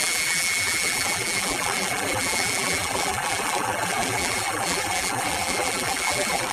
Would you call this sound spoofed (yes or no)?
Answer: yes